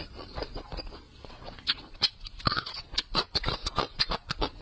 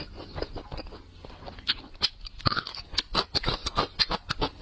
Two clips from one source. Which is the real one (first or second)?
second